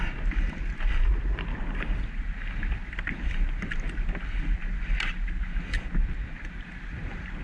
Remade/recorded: recorded